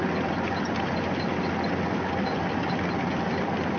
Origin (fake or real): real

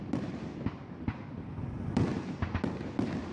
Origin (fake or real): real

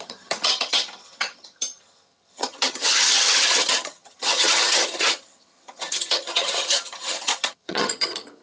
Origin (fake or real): fake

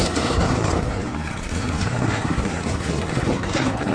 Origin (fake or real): fake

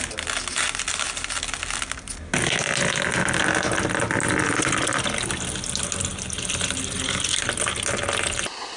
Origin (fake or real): real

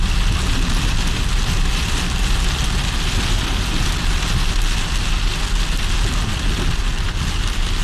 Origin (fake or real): real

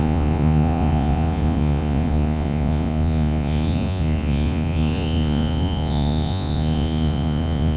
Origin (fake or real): fake